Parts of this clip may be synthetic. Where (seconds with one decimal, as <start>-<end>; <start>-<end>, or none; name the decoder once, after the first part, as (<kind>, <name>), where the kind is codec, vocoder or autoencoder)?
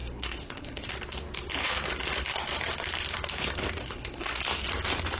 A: 0.0-0.9 (codec, SNAC); 3.8-4.4